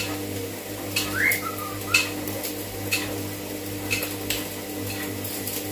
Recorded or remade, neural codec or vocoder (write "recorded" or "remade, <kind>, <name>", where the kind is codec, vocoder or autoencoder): recorded